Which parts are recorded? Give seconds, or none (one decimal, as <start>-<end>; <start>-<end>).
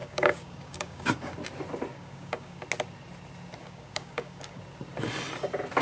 1.3-1.9; 2.6-3.6; 4.6-5.8